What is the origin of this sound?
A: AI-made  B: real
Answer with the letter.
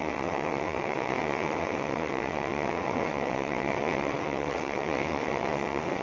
A